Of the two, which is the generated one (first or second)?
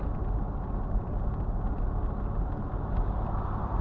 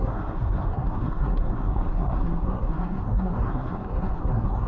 second